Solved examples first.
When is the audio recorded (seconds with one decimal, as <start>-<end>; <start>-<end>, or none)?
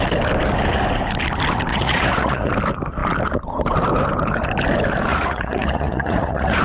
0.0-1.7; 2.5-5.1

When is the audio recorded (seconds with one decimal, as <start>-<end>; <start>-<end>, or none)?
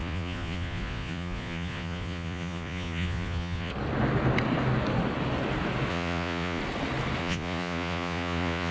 3.7-5.9; 6.6-7.2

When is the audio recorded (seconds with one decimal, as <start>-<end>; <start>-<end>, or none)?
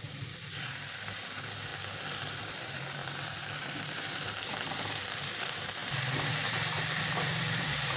1.7-2.4